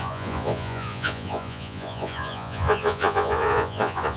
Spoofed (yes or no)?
yes